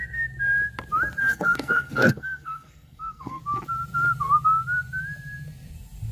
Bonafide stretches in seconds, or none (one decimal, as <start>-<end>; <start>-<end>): 0.0-1.2; 3.4-6.1